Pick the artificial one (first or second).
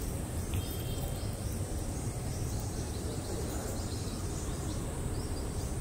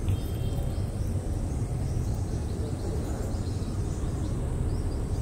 first